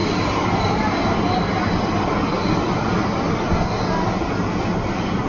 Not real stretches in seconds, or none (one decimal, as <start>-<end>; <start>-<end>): none